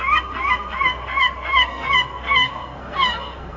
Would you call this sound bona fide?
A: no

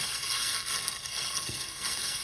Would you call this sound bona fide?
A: no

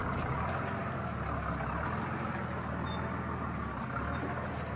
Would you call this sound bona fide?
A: yes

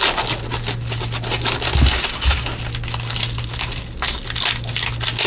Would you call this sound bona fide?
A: yes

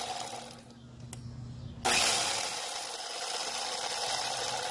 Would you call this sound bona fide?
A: yes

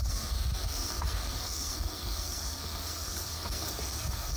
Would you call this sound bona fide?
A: no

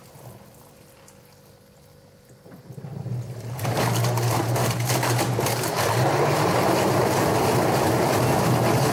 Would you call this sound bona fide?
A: yes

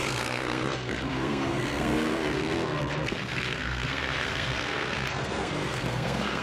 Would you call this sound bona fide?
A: no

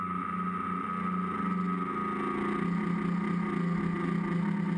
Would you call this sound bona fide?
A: yes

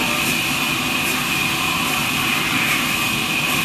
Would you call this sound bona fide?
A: yes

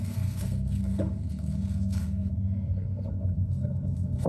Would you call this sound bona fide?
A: no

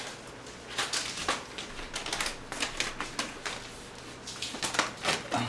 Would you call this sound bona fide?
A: yes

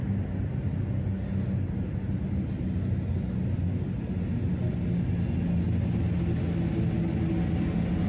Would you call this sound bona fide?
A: yes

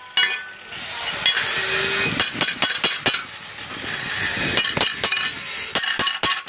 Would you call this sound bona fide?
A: yes